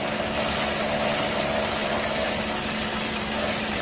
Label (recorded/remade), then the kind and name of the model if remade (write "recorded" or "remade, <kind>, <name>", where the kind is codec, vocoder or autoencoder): recorded